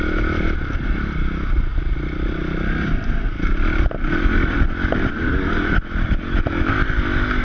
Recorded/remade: recorded